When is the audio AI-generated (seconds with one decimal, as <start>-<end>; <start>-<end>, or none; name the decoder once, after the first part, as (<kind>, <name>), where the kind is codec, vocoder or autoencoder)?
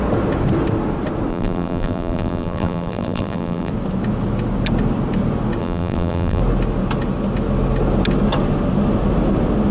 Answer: 1.3-3.7 (vocoder, BigVGAN v2); 5.6-6.4